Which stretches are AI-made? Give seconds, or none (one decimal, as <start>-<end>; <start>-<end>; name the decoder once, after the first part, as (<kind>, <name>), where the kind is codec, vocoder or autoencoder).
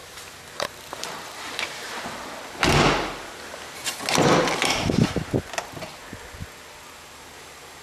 0.0-2.3 (vocoder, BigVGAN v2)